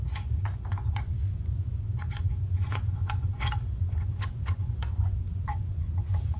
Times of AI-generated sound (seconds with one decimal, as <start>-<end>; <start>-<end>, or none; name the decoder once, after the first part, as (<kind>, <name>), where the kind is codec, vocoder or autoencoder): 0.0-6.4 (vocoder, Vocos)